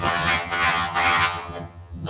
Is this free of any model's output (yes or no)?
no